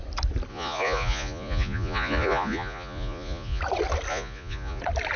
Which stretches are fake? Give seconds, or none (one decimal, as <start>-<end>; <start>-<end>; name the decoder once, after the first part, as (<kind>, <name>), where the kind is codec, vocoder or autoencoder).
0.5-3.6 (vocoder, Vocos); 4.1-4.8